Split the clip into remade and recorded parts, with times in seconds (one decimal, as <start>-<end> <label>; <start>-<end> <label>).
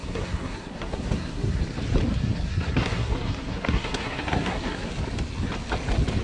0.0-1.6 remade; 1.6-2.1 recorded; 2.1-4.9 remade; 4.9-6.2 recorded